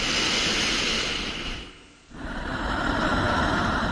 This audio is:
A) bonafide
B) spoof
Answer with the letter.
A